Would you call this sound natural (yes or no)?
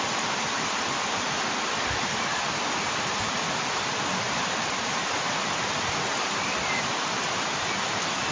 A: no